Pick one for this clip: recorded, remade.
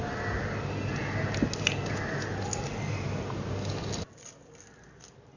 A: recorded